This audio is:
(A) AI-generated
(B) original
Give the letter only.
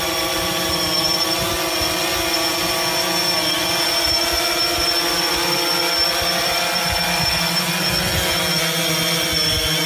B